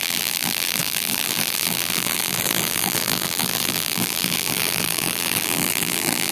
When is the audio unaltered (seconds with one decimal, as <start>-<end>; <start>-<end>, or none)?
none